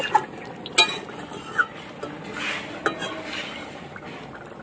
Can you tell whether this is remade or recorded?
recorded